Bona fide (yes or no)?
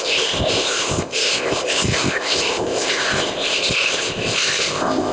no